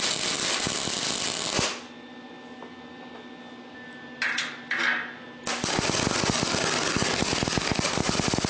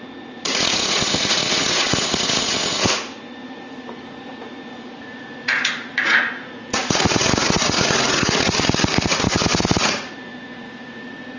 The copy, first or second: second